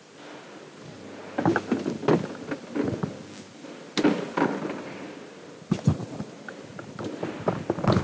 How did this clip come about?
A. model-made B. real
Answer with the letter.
B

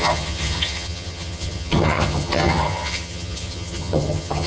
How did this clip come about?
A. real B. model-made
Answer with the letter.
B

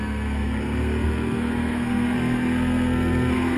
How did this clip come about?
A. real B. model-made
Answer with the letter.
B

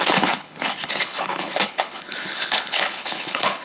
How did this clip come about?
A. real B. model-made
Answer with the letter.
B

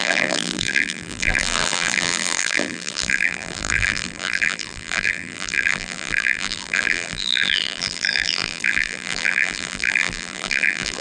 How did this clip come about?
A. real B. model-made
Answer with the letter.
B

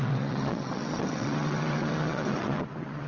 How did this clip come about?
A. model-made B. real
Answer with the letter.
A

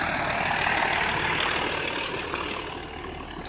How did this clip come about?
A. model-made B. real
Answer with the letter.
B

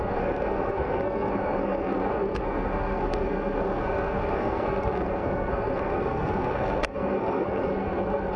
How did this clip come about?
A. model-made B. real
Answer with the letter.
A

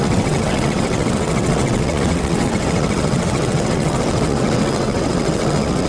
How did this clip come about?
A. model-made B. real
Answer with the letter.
A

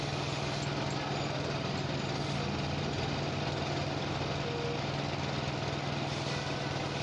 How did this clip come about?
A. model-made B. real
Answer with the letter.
B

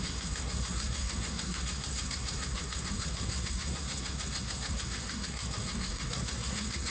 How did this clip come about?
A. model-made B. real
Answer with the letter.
A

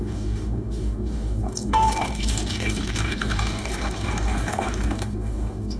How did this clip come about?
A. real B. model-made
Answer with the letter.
B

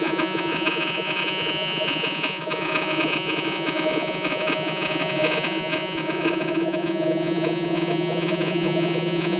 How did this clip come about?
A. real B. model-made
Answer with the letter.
B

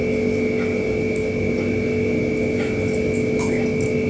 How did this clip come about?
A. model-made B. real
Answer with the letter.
B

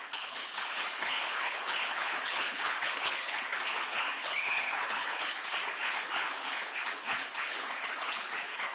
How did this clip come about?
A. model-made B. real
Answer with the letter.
A